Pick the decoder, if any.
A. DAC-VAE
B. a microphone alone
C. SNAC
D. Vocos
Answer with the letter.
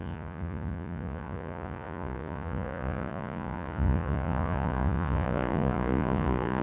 D